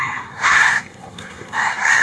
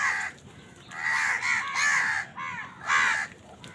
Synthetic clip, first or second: first